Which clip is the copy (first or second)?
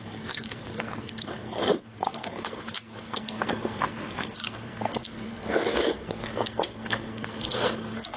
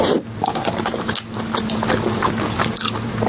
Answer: first